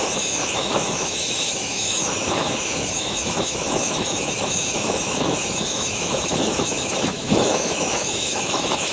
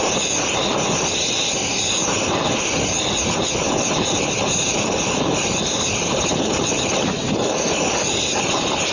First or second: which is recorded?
second